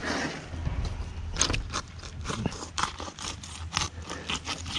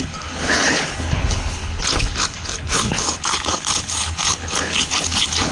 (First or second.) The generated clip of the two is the second